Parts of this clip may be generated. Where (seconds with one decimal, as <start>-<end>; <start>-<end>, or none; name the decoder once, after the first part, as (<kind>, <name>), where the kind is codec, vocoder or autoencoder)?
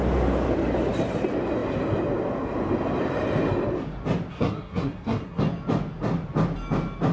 4.3-5.4 (codec, SNAC)